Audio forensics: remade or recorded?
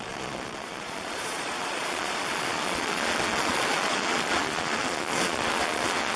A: remade